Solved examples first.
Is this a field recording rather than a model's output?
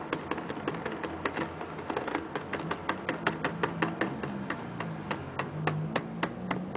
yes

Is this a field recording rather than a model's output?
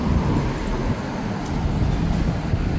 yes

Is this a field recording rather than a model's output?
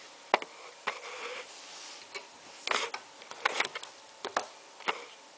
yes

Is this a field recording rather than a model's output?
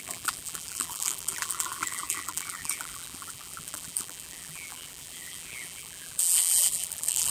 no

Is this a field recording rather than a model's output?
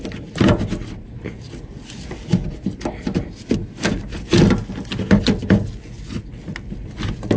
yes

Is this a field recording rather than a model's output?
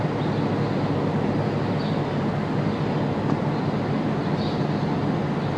yes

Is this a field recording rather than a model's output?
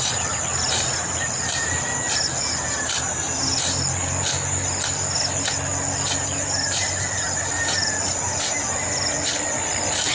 yes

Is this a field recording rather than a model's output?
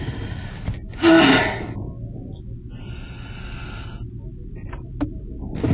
yes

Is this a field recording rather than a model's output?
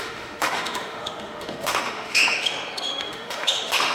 no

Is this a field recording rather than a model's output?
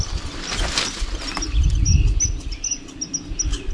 yes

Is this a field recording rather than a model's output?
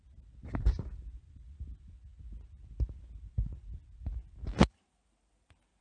yes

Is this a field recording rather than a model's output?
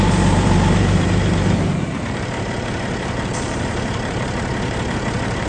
no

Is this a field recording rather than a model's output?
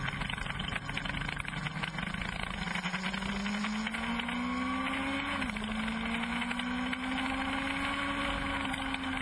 yes